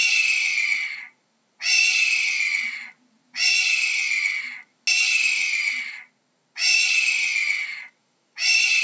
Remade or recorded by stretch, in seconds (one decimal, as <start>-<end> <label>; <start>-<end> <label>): 0.0-7.7 recorded; 7.7-8.8 remade